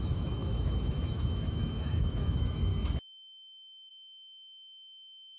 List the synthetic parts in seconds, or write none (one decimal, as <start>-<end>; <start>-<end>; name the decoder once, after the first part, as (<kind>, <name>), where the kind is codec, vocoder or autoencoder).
0.0-2.7 (autoencoder, DAC-VAE); 3.9-5.4